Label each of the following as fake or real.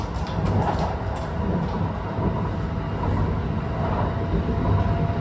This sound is real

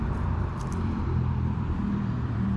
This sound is fake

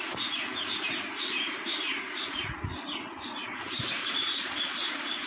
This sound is fake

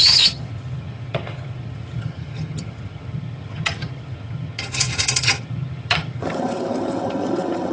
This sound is fake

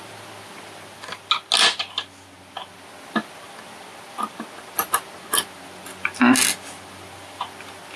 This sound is real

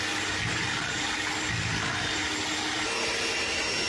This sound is real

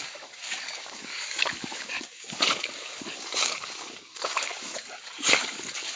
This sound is fake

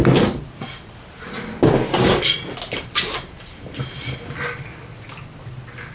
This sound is real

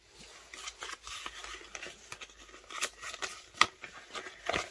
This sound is real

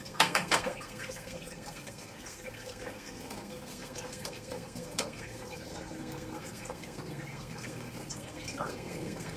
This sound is fake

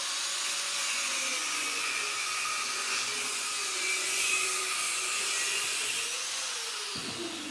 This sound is fake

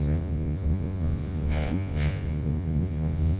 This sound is fake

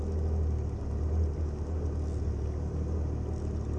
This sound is real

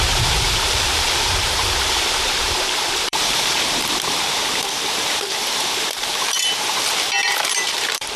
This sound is fake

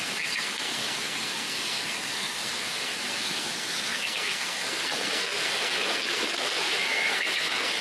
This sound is fake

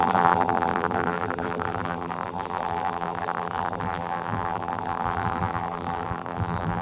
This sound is fake